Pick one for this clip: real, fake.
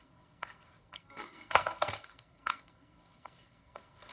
fake